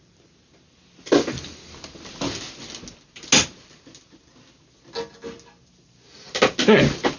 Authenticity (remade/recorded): recorded